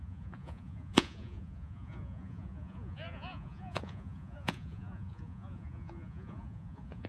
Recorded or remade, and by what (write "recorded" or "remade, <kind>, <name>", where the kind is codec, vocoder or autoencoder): remade, vocoder, Vocos